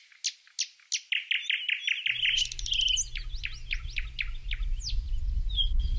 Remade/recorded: recorded